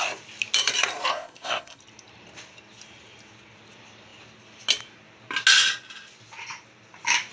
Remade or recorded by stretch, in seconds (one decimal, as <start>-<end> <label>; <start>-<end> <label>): 0.0-1.1 recorded; 1.1-1.8 remade; 1.8-7.3 recorded